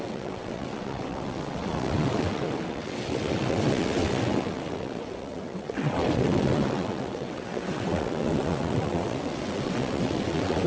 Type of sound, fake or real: fake